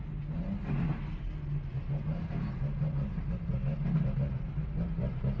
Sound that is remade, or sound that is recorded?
recorded